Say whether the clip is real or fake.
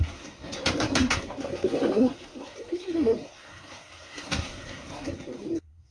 fake